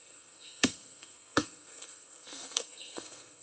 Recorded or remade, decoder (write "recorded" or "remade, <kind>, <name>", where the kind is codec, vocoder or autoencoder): remade, codec, SNAC